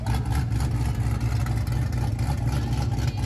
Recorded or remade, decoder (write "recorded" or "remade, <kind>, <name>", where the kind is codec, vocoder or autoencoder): recorded